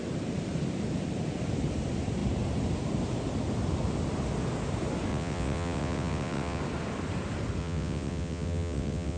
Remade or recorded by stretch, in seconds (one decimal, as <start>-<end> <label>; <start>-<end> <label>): 0.0-5.1 recorded; 5.1-6.6 remade; 6.6-7.6 recorded; 7.6-9.2 remade